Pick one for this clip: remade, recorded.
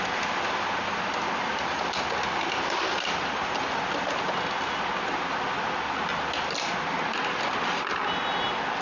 recorded